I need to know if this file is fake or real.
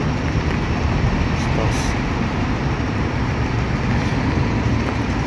fake